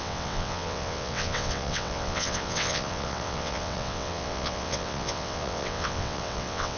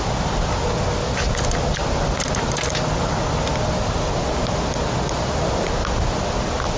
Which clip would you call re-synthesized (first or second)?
first